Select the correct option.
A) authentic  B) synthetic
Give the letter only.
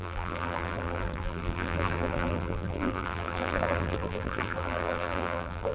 B